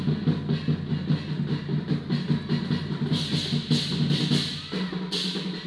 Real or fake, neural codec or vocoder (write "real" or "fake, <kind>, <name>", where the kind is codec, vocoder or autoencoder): real